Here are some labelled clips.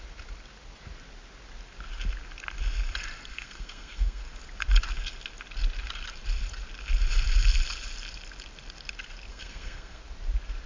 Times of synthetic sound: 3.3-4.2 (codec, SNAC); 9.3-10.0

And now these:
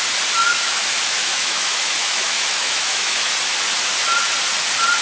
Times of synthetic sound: 0.4-3.3 (autoencoder, DAC-VAE)

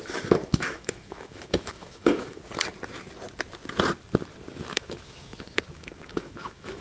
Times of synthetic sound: 0.0-2.4 (autoencoder, DAC-VAE); 4.5-6.8

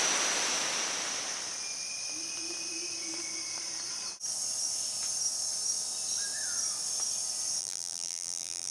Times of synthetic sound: 7.6-8.7 (vocoder, BigVGAN v2)

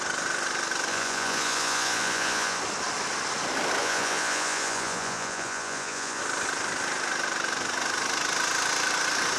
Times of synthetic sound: 0.9-2.6 (vocoder, Vocos); 3.8-6.2